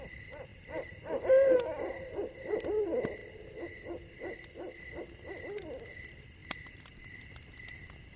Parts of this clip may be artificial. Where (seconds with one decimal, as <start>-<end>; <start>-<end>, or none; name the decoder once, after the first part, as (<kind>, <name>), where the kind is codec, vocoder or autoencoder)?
0.5-1.6 (vocoder, BigVGAN v2); 6.4-7.2